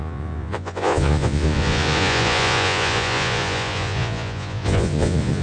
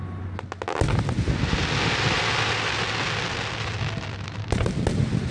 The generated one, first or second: first